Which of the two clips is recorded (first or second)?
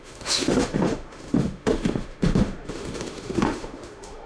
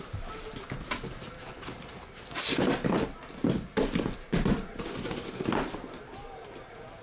second